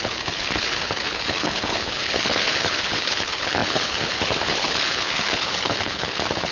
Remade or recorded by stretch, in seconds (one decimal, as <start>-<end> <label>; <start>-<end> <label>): 0.0-6.5 remade